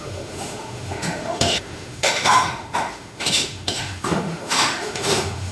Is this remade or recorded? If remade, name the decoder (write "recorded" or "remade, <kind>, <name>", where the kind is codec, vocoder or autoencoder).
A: remade, autoencoder, DAC-VAE